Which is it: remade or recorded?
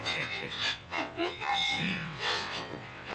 remade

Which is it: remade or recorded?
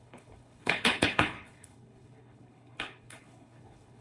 remade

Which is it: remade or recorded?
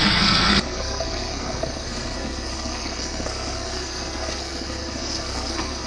remade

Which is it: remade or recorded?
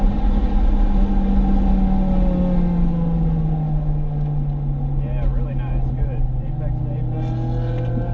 recorded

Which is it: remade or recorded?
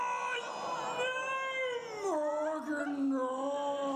recorded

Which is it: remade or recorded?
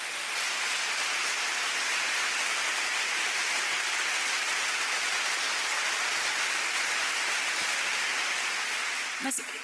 recorded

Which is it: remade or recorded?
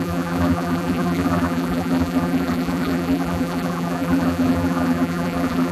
remade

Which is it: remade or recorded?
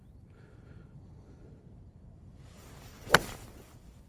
remade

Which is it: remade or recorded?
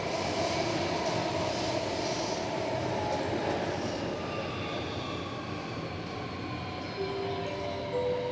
recorded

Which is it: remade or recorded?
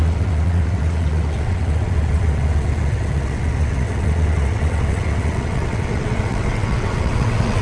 remade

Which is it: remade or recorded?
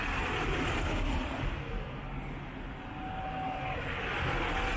recorded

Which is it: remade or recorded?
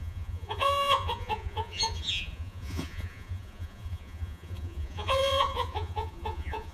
remade